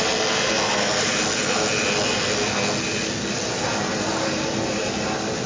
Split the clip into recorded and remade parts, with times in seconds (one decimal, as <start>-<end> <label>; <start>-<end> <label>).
0.0-5.5 recorded